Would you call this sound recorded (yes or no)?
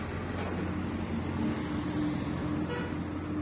yes